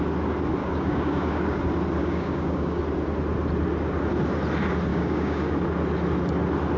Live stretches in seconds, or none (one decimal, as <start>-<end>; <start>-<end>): 0.0-0.6; 1.6-2.0; 2.8-4.9; 5.6-6.8